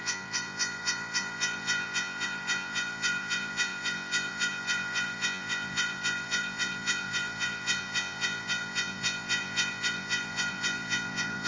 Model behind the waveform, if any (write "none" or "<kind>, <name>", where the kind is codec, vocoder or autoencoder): vocoder, Vocos